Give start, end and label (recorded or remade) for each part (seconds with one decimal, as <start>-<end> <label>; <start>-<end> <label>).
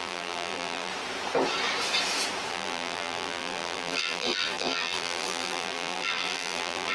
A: 0.0-0.9 remade; 0.9-2.5 recorded; 2.5-6.9 remade